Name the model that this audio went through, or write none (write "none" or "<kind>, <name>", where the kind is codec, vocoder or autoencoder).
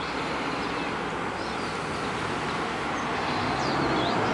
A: none